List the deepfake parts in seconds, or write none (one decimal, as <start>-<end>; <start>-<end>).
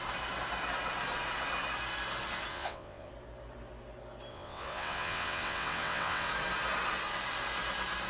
2.5-3.1; 4.3-6.3